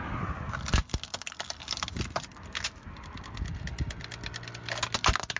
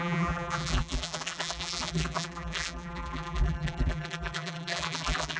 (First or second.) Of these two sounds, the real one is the first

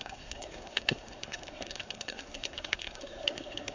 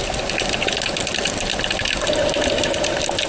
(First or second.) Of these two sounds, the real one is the second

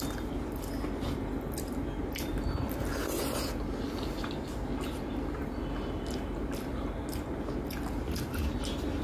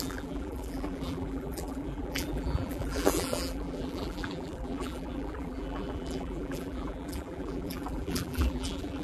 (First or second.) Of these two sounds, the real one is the first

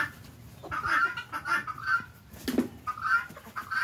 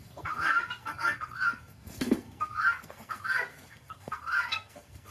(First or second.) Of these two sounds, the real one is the first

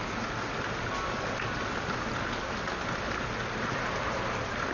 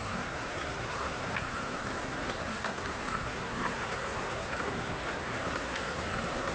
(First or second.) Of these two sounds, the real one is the first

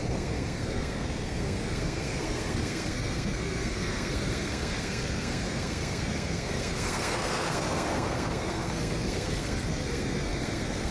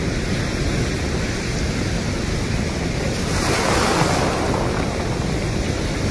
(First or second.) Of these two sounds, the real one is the second